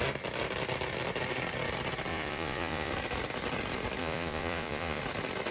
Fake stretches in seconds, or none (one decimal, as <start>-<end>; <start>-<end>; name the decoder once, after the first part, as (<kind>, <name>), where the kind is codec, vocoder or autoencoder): 2.1-2.9 (vocoder, Vocos); 4.0-5.0